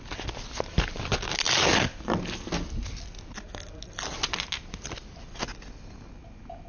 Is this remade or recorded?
recorded